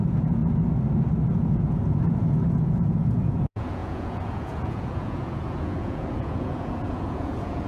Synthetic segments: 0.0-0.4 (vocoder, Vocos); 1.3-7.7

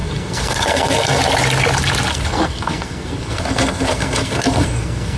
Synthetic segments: 0.0-1.2 (codec, SNAC); 2.1-5.2

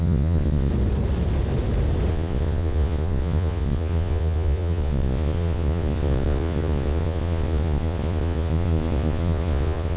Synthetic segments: 0.0-0.7 (vocoder, Vocos); 2.1-10.0

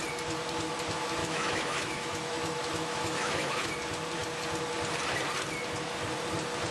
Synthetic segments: 1.2-3.7 (autoencoder, DAC-VAE)

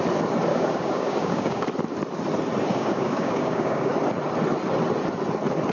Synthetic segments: 0.5-1.7 (codec, DAC); 2.7-3.9

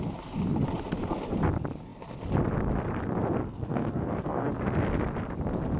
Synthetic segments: 3.4-4.5 (codec, SNAC)